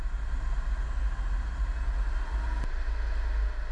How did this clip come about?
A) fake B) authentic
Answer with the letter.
B